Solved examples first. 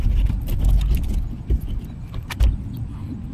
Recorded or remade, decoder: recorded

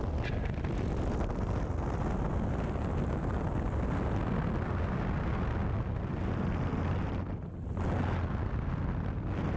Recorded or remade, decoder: recorded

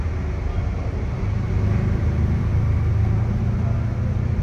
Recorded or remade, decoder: recorded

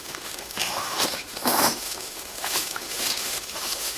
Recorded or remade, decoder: remade, autoencoder, DAC-VAE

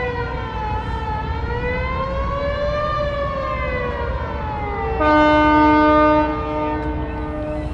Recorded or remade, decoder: recorded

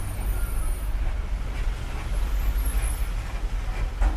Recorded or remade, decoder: recorded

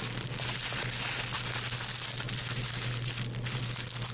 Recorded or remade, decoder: recorded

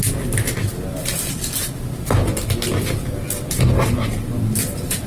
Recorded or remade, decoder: recorded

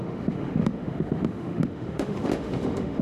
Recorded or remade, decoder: remade, autoencoder, DAC-VAE